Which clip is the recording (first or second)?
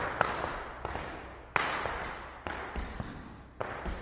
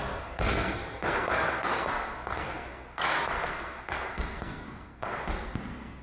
first